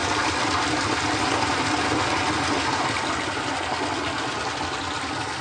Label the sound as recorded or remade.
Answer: recorded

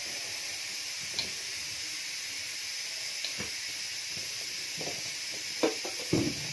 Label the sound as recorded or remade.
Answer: recorded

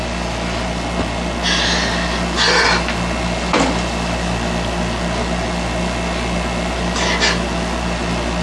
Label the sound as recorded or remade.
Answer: recorded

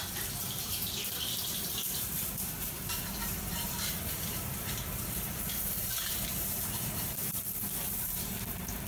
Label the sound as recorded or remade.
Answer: remade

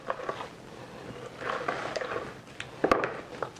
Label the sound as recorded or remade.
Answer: recorded